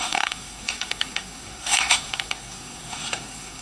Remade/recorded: remade